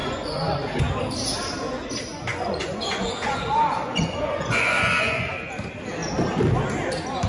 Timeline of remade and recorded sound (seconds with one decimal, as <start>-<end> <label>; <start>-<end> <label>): 0.0-0.8 remade; 0.8-2.3 recorded; 2.3-5.3 remade; 5.3-7.3 recorded